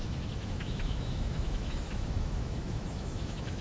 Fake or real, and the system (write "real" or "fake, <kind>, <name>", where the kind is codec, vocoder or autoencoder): fake, autoencoder, DAC-VAE